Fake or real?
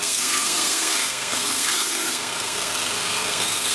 fake